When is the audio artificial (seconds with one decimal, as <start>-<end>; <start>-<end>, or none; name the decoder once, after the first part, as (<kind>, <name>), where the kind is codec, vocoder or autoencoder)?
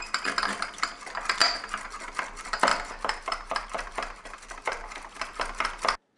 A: 2.7-5.4 (vocoder, BigVGAN v2)